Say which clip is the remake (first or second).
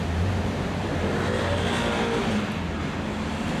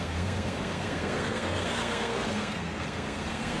second